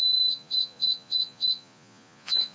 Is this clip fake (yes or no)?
yes